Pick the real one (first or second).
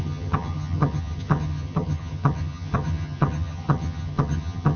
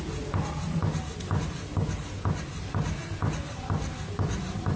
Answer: second